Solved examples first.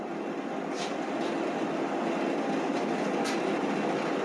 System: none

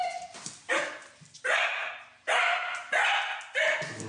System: none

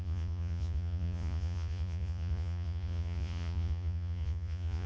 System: vocoder, Vocos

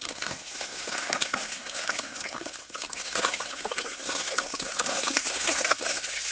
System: codec, SNAC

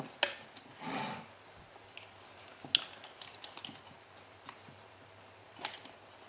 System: none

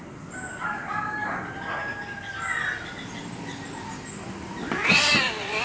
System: none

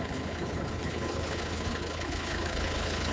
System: codec, HILCodec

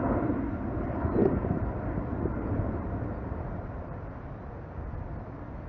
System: none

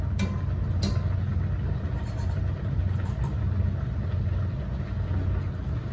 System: none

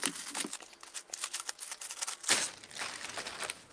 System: none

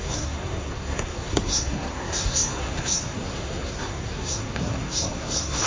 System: codec, SNAC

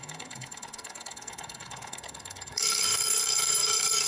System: codec, SNAC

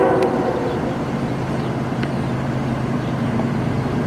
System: vocoder, BigVGAN v2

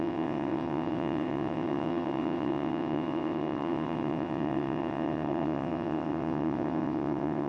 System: vocoder, WaveNeXt